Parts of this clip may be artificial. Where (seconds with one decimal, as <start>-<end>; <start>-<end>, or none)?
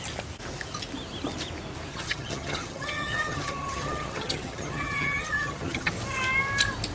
1.9-5.9